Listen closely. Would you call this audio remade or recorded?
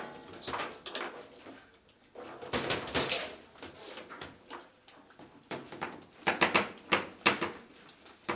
recorded